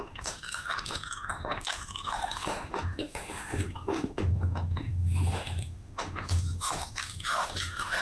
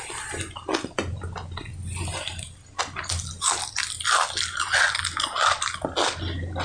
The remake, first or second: first